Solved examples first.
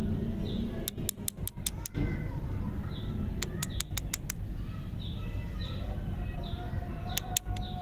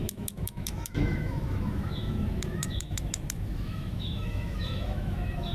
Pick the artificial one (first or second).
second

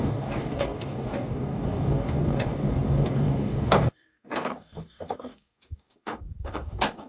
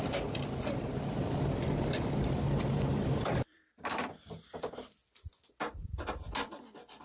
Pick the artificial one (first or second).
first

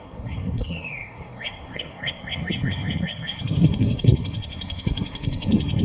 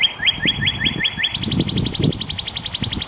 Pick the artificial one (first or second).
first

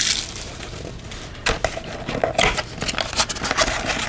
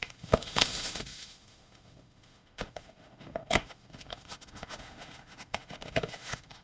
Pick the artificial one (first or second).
second